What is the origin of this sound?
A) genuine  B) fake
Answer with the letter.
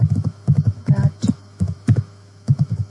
B